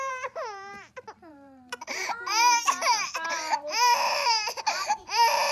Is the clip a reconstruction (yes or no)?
yes